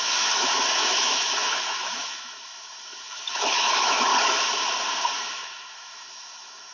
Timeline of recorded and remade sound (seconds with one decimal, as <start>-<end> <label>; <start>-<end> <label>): 0.0-4.1 remade; 4.1-5.2 recorded; 5.2-6.7 remade